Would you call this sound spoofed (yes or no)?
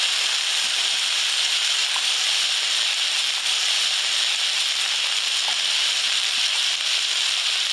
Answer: no